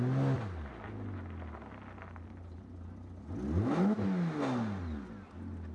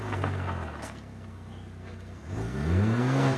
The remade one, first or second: second